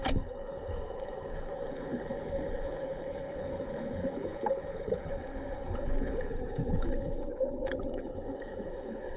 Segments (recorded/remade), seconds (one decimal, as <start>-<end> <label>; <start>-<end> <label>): 0.0-9.2 remade